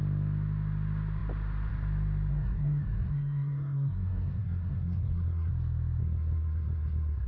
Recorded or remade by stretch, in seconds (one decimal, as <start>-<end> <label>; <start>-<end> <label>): 0.0-2.3 recorded; 2.3-5.5 remade; 5.5-6.0 recorded; 6.0-7.3 remade

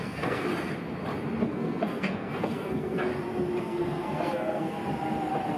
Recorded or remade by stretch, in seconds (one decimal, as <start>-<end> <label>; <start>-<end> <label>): 0.0-0.5 remade; 0.5-1.4 recorded; 1.4-3.1 remade; 3.1-3.6 recorded; 3.6-4.8 remade; 4.8-5.6 recorded

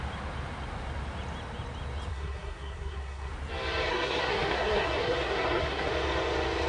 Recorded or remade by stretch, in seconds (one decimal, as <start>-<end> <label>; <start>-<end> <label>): 0.0-2.1 recorded; 2.1-3.3 remade; 3.3-3.9 recorded; 3.9-5.9 remade; 5.9-6.7 recorded

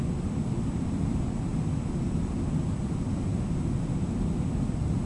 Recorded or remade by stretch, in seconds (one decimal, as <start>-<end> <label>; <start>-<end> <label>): 0.0-5.1 recorded

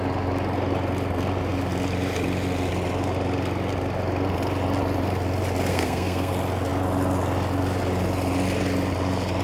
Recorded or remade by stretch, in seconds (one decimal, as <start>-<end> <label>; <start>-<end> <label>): 0.0-5.7 recorded; 5.7-6.3 remade; 6.3-9.4 recorded